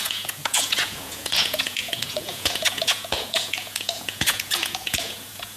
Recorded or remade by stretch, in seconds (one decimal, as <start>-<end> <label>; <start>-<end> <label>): 0.0-5.6 remade